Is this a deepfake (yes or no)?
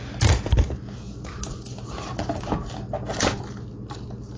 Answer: no